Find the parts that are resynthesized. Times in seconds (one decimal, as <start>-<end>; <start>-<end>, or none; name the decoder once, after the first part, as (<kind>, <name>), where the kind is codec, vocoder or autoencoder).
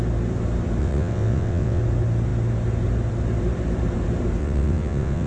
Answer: 0.8-1.8 (vocoder, WaveNeXt); 4.4-5.3